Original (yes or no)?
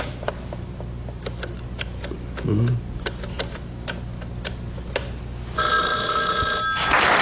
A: yes